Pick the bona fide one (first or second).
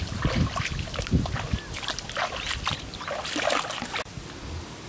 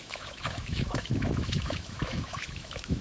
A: first